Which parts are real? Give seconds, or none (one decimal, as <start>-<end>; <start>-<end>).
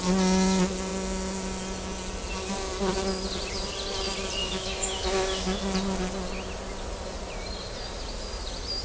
0.0-4.4; 5.6-8.8